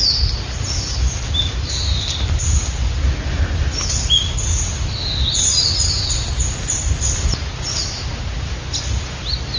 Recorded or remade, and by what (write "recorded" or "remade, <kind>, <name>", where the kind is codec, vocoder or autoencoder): recorded